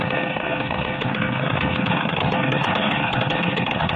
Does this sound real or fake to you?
fake